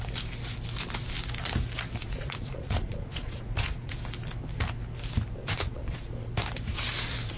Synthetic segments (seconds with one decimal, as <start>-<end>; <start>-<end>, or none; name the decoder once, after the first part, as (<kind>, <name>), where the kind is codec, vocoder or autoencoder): 2.0-4.0 (vocoder, Vocos); 5.4-6.1

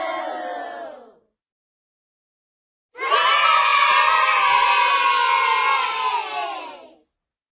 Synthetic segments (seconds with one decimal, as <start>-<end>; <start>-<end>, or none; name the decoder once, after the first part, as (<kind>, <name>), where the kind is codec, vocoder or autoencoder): none

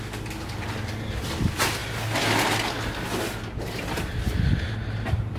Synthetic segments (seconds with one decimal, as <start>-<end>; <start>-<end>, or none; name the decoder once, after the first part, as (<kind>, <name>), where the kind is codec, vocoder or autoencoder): none

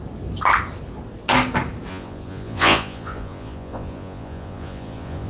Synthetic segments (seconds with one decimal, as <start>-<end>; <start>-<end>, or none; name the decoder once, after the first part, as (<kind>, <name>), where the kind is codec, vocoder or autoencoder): 1.9-5.3 (vocoder, Vocos)

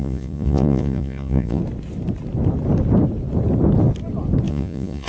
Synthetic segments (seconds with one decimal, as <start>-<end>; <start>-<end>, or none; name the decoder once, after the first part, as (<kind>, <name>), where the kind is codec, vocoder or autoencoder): 0.0-1.6 (vocoder, Vocos); 4.5-5.1

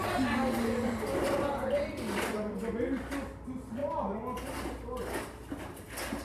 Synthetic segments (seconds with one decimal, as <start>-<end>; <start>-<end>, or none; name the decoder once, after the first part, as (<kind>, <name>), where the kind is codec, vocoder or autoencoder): none

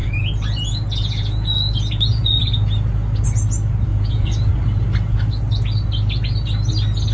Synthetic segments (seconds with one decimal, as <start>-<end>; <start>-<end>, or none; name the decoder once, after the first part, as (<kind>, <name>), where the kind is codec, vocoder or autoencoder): 0.0-2.4 (vocoder, Vocos); 3.9-4.5